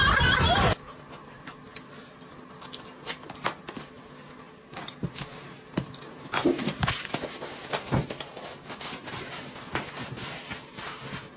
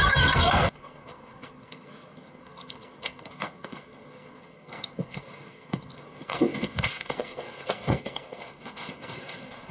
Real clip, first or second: first